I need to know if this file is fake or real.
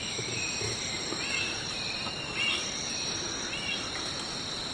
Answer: fake